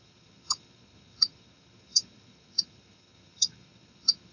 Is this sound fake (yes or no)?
yes